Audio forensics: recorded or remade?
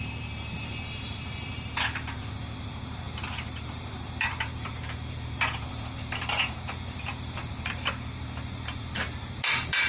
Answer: remade